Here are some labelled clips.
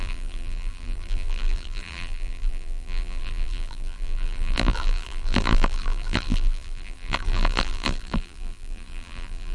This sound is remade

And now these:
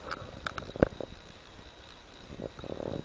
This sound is recorded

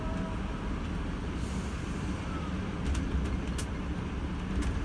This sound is recorded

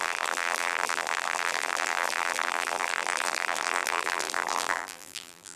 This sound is remade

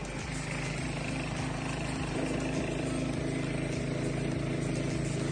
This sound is recorded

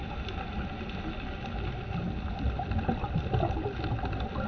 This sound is recorded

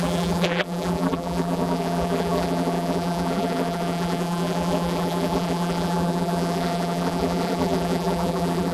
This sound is remade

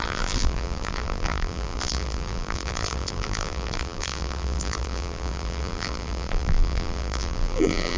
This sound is remade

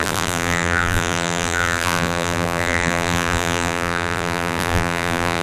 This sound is remade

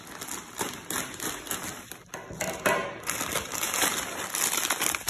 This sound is recorded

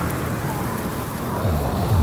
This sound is remade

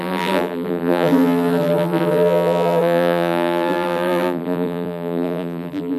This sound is remade